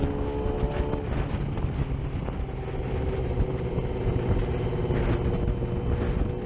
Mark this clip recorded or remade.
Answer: recorded